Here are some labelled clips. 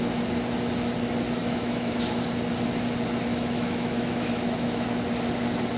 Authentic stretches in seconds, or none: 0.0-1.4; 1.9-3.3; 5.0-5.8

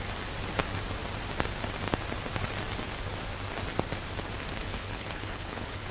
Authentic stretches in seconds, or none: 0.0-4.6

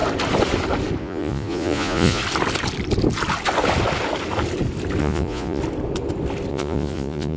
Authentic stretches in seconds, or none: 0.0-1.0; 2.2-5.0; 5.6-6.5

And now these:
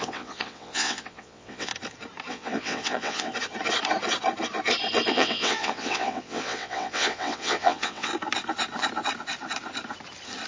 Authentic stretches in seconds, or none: 1.7-2.3; 3.3-5.1; 8.1-10.5

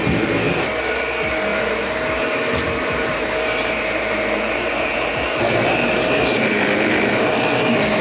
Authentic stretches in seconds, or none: 0.0-1.5; 5.9-8.0

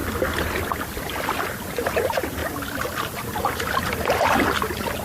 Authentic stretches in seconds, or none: 0.0-1.7; 2.4-3.4